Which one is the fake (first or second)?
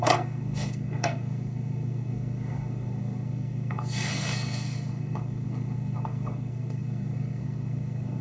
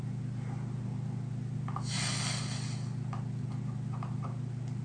first